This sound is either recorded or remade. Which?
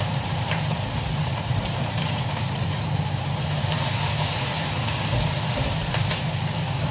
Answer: remade